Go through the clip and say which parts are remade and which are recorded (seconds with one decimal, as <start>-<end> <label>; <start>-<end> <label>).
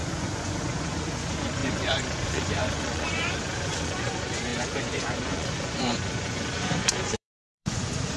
0.0-8.2 remade